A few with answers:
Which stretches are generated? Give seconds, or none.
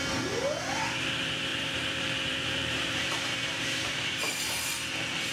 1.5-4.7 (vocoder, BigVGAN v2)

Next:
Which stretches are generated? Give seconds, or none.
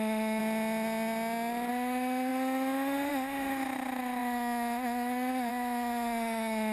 0.0-0.4 (autoencoder, DAC-VAE); 1.7-6.7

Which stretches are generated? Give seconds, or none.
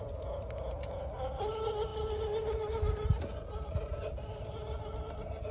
none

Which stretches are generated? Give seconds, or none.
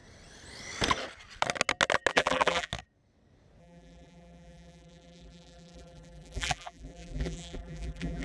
2.1-2.7 (vocoder, BigVGAN v2); 3.6-8.2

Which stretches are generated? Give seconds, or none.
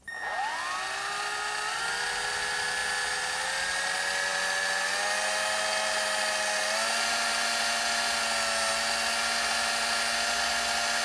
none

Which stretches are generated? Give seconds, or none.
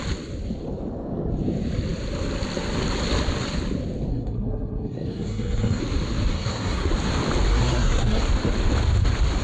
4.1-5.8 (codec, SNAC); 6.3-6.9; 7.5-8.2